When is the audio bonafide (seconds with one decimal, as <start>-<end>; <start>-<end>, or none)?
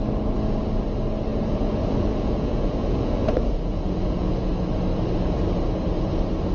0.0-1.3; 4.5-6.5